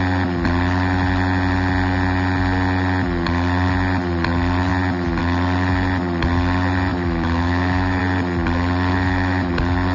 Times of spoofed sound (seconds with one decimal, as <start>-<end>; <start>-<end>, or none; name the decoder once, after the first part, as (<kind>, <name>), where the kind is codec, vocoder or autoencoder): 6.9-8.0 (autoencoder, DAC-VAE); 8.9-9.5